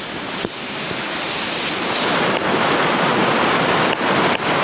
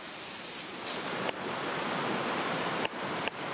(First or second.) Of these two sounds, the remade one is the second